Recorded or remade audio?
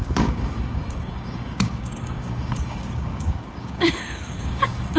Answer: remade